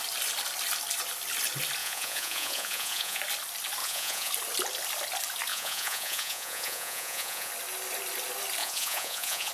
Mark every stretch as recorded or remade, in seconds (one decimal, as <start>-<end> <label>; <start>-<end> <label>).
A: 0.0-1.8 recorded; 1.8-3.2 remade; 3.2-3.8 recorded; 3.8-4.3 remade; 4.3-5.5 recorded; 5.5-7.5 remade; 7.5-8.6 recorded; 8.6-9.5 remade